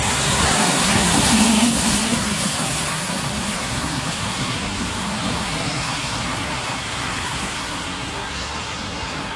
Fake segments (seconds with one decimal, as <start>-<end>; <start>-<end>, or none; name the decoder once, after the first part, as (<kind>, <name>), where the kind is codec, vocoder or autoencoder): 0.0-9.4 (codec, SNAC)